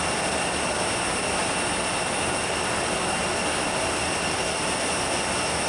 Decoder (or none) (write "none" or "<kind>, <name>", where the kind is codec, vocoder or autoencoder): none